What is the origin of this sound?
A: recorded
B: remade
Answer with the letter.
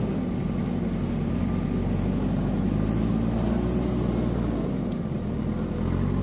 A